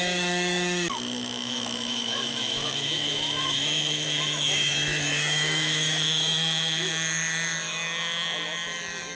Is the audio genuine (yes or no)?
no